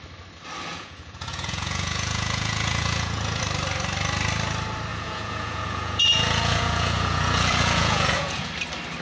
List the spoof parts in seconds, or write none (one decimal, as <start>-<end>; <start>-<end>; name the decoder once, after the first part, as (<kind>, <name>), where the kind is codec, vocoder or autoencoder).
0.7-3.4 (vocoder, Vocos); 4.9-8.5